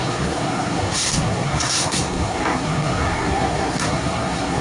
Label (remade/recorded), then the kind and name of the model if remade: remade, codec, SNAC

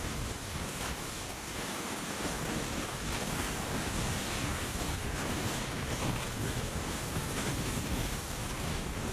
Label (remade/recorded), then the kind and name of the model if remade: remade, codec, DAC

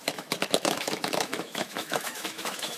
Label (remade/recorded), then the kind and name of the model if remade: remade, autoencoder, DAC-VAE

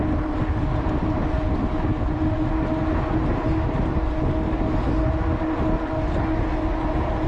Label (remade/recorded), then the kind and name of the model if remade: recorded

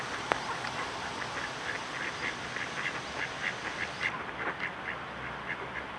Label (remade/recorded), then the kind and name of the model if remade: recorded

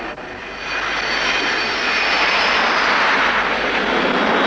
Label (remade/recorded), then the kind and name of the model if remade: recorded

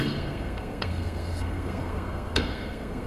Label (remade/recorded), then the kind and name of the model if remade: remade, codec, SNAC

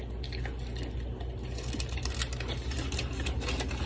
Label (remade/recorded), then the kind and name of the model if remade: recorded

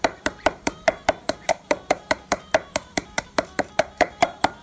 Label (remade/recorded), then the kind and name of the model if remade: remade, vocoder, BigVGAN v2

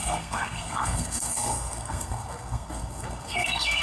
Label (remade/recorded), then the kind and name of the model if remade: remade, codec, SNAC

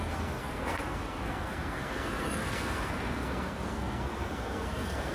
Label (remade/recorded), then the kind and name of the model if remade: remade, codec, SNAC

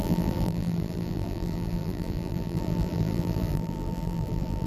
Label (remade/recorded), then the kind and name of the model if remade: remade, vocoder, BigVGAN v2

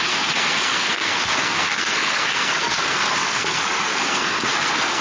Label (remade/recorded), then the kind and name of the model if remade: remade, codec, SNAC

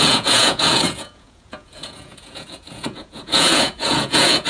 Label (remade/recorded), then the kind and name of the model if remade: remade, vocoder, Vocos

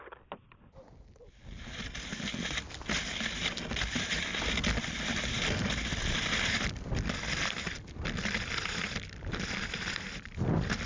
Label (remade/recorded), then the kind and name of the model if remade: recorded